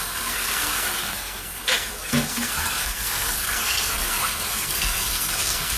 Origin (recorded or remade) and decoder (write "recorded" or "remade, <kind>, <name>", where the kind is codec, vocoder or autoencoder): remade, codec, SNAC